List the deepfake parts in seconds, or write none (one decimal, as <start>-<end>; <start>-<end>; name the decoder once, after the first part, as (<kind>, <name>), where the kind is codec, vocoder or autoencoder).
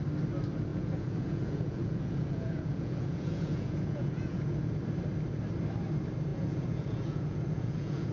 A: 0.7-4.8 (vocoder, Vocos); 6.3-8.1